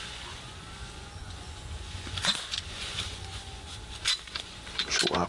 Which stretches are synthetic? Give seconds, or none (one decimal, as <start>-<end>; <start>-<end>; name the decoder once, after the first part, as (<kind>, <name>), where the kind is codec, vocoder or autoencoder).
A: 0.0-4.8 (vocoder, Vocos)